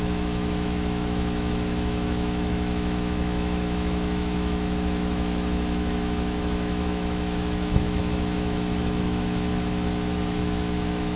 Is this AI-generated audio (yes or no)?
yes